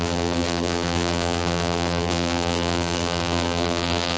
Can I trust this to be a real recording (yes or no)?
no